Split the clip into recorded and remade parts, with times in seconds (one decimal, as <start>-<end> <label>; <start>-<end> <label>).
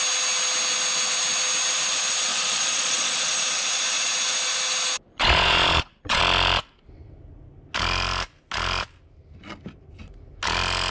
0.0-2.3 recorded; 2.3-3.3 remade; 3.3-5.1 recorded; 5.1-6.2 remade; 6.2-10.9 recorded